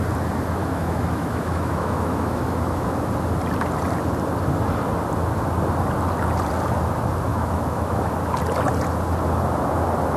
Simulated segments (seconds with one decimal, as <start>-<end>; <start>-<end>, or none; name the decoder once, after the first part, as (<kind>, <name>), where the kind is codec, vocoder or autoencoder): 0.6-3.0 (autoencoder, DAC-VAE); 7.3-8.1